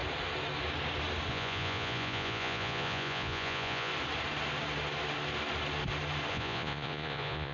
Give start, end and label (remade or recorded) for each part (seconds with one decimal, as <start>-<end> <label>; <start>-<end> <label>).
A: 0.0-1.3 recorded; 1.3-3.9 remade; 3.9-6.3 recorded; 6.3-7.5 remade